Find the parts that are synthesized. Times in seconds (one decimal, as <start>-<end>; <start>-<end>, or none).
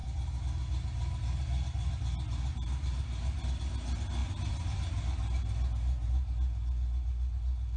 none